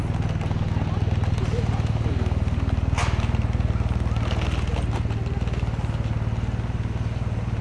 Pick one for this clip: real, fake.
real